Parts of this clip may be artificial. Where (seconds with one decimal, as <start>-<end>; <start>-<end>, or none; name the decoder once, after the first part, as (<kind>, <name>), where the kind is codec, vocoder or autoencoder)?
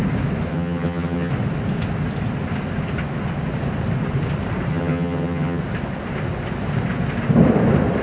0.5-1.3 (vocoder, HiFi-GAN); 4.7-5.6